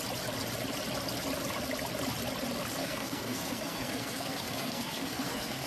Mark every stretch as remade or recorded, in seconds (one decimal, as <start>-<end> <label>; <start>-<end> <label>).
0.0-2.8 recorded; 2.8-5.7 remade